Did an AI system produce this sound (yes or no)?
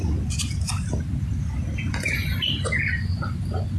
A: no